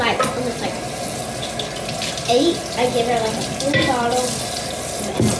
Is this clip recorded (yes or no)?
yes